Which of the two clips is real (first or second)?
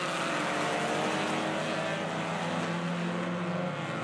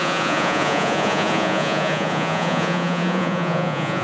first